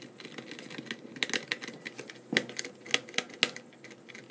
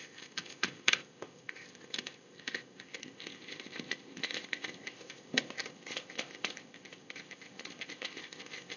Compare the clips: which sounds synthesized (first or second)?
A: second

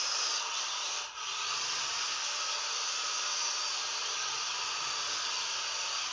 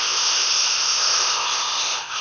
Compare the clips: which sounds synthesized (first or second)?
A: second